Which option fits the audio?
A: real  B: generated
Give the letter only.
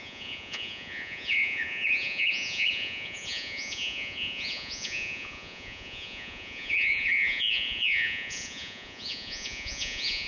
B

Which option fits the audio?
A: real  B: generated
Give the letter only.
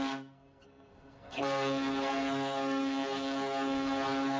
B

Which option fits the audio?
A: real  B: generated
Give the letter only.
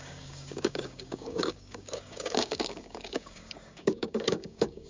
B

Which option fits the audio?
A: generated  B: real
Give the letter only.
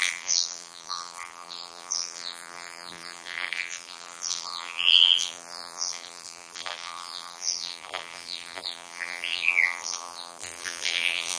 A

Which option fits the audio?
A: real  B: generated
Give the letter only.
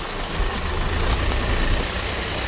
A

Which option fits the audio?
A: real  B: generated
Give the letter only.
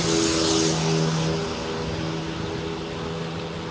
A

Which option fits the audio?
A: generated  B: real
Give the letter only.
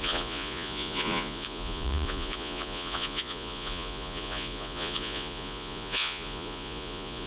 A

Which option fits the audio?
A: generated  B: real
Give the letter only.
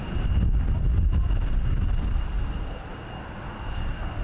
B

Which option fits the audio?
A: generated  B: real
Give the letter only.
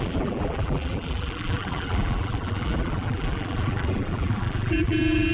A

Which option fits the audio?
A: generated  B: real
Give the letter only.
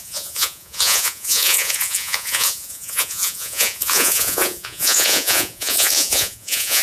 A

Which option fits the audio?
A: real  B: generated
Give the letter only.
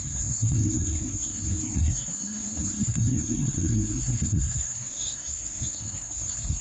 B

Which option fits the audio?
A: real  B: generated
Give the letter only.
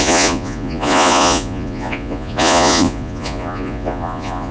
B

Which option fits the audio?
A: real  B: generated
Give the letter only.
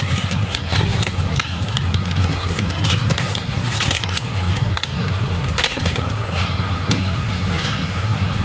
B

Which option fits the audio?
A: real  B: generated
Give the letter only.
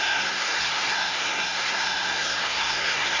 B